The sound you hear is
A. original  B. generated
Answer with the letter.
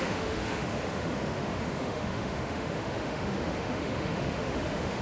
B